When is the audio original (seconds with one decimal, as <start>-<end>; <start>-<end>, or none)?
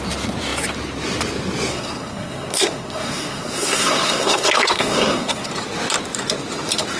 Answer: 0.0-1.7; 5.5-7.0